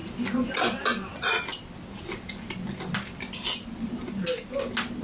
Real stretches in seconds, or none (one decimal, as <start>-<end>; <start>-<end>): 0.0-5.0